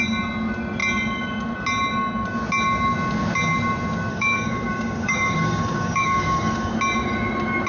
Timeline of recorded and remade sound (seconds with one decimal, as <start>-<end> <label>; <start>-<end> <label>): 0.0-4.1 recorded; 4.1-6.7 remade; 6.7-7.7 recorded